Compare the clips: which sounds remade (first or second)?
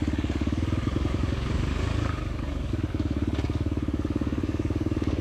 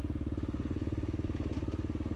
first